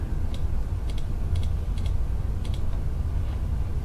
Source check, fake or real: real